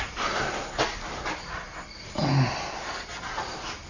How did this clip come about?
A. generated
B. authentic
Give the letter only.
B